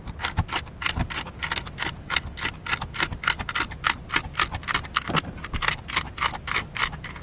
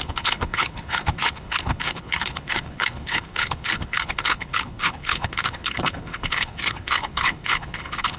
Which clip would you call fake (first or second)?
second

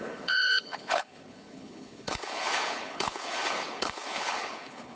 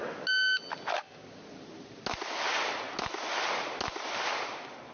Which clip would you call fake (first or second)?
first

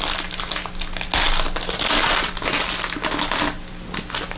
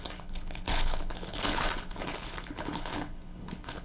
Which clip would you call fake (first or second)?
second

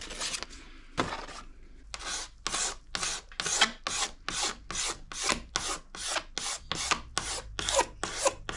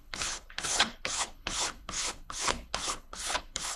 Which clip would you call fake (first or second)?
second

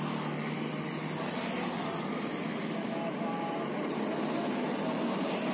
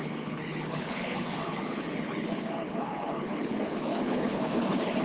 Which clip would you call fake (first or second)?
second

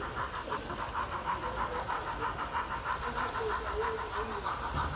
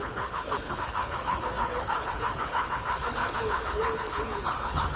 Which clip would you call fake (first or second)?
second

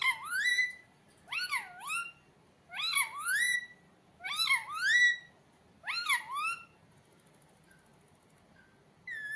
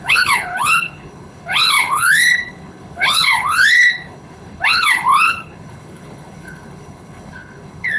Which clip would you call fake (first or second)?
second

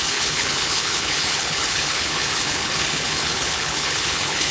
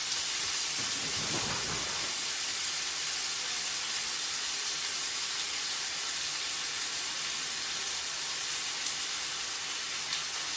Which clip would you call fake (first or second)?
first